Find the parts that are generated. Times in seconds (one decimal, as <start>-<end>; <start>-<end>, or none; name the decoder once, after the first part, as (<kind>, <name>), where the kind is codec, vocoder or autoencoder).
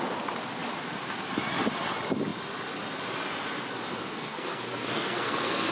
3.9-5.7 (codec, SNAC)